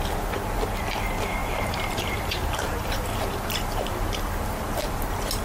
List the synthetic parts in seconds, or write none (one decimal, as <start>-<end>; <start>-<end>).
1.4-4.6